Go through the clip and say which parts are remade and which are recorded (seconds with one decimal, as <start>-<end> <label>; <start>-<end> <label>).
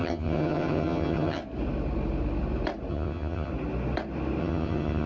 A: 0.0-1.4 remade; 1.4-2.9 recorded; 2.9-3.5 remade; 3.5-4.4 recorded; 4.4-5.1 remade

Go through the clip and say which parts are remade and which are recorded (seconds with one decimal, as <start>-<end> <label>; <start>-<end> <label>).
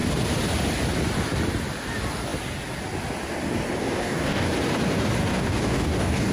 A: 0.0-3.8 recorded; 3.8-4.5 remade; 4.5-5.2 recorded; 5.2-6.3 remade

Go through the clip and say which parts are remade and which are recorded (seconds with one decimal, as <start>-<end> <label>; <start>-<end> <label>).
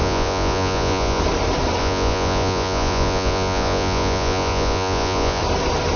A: 0.0-1.2 remade; 1.2-1.8 recorded; 1.8-5.4 remade; 5.4-6.0 recorded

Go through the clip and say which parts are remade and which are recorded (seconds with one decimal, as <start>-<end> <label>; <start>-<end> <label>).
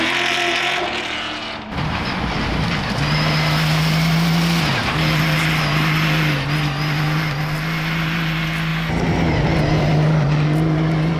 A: 0.0-11.2 recorded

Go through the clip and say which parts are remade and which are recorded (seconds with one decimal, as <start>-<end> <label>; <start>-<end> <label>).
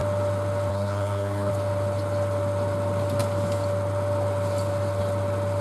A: 0.0-0.7 recorded; 0.7-1.5 remade; 1.5-5.6 recorded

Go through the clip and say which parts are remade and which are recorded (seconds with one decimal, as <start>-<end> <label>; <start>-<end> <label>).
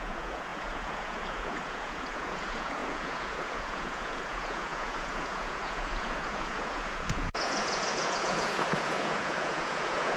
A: 0.0-10.2 remade